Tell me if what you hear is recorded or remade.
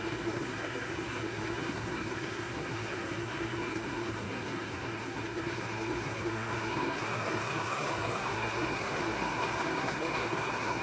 remade